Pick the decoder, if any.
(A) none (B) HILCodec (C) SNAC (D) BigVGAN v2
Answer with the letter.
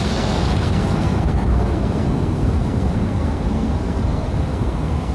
C